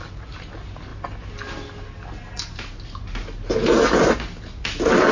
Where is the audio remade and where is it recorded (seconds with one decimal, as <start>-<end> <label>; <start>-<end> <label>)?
0.0-5.1 recorded